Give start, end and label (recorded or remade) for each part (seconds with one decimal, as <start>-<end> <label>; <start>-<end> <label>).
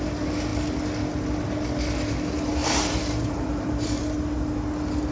0.0-2.6 recorded; 2.6-4.0 remade; 4.0-5.1 recorded